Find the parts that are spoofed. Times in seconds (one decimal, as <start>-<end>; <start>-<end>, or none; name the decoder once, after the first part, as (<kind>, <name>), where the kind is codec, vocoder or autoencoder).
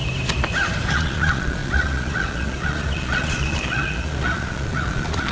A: 0.9-5.3 (vocoder, Vocos)